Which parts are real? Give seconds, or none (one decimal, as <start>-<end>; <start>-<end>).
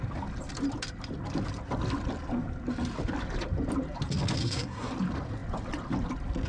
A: 0.0-4.4; 4.9-6.5